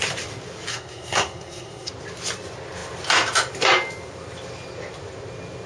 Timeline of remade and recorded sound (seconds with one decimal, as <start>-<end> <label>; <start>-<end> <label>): 0.0-0.7 recorded; 0.7-1.9 remade; 1.9-5.7 recorded